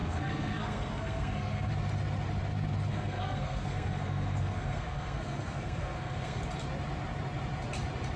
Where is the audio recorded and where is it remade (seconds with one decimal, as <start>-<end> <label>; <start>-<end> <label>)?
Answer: 0.0-1.7 remade; 1.7-2.9 recorded; 2.9-6.4 remade; 6.4-8.2 recorded